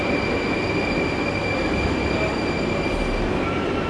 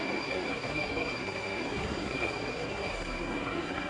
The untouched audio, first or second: first